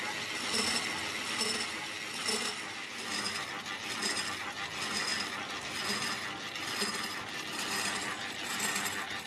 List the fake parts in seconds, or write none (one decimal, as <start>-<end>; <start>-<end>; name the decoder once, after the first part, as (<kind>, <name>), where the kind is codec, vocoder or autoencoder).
none